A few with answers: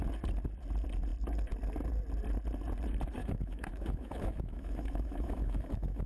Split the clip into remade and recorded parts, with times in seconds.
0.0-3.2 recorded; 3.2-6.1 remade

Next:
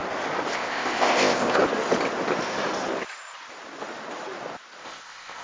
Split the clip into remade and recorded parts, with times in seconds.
0.0-0.5 recorded; 0.5-1.6 remade; 1.6-4.8 recorded; 4.8-5.4 remade

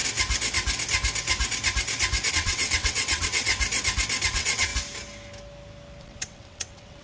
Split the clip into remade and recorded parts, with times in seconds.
0.0-2.3 recorded; 2.3-3.5 remade; 3.5-4.3 recorded; 4.3-4.7 remade; 4.7-6.0 recorded; 6.0-7.0 remade